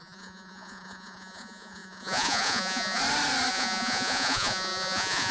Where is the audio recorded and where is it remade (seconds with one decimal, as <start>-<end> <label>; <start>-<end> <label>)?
0.0-3.0 remade; 3.0-3.5 recorded; 3.5-5.3 remade